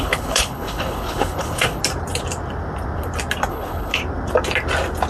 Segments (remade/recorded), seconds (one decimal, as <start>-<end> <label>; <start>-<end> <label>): 0.0-1.8 remade; 1.8-3.5 recorded; 3.5-4.0 remade; 4.0-5.1 recorded